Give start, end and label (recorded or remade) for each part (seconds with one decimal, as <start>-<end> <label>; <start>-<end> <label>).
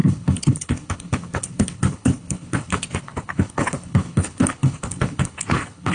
0.0-5.9 remade